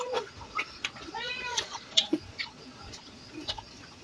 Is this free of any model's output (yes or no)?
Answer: no